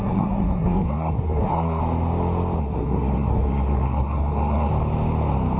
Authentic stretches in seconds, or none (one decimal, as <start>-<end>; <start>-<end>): 1.8-2.6; 4.7-5.6